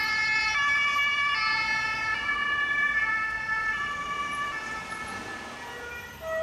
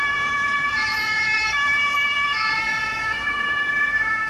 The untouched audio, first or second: first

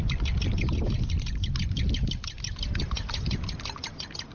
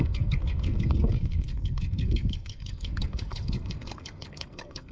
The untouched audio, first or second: first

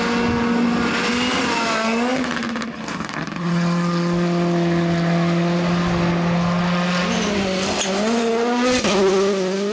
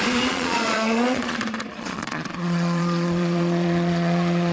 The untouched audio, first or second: first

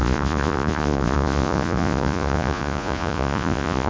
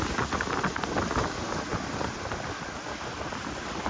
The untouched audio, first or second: second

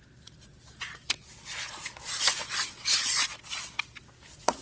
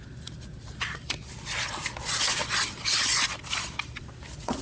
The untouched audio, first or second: first